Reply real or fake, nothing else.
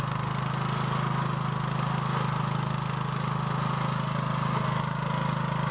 real